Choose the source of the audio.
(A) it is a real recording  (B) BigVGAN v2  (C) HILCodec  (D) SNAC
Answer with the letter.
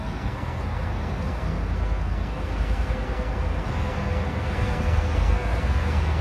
D